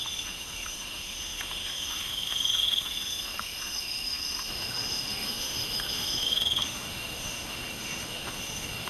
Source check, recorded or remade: remade